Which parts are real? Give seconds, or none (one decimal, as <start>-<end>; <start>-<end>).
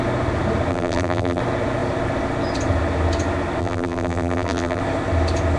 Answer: 0.0-0.7; 1.4-3.6; 4.8-5.6